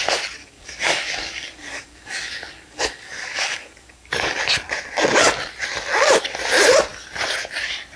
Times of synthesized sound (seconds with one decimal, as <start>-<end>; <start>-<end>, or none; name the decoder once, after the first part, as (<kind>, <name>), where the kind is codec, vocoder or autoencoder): 0.4-4.4 (codec, DAC)